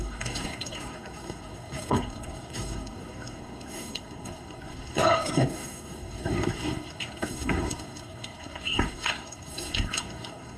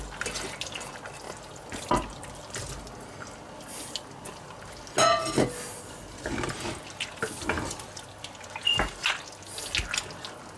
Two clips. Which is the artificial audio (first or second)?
first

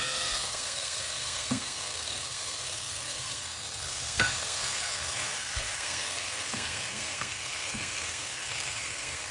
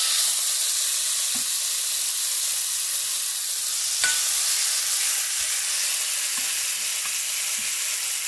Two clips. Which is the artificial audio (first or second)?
first